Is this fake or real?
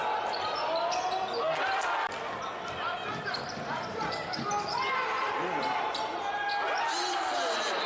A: real